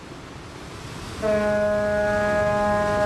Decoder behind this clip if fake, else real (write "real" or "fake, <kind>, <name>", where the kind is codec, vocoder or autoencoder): real